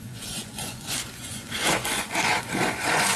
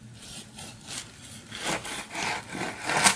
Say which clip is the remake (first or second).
first